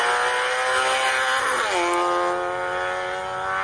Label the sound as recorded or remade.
recorded